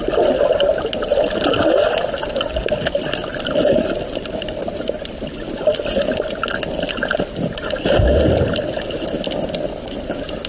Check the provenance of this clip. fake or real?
real